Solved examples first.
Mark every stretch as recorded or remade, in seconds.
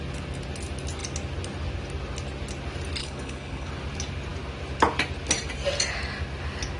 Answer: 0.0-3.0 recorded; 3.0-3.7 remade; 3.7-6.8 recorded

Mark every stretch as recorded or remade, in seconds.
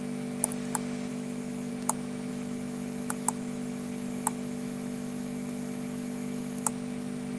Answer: 0.0-1.1 recorded; 1.1-1.7 remade; 1.7-2.3 recorded; 2.3-6.7 remade; 6.7-7.4 recorded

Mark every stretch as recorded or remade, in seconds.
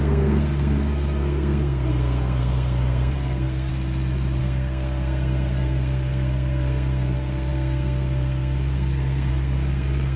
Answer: 0.0-3.7 remade; 3.7-4.4 recorded; 4.4-10.2 remade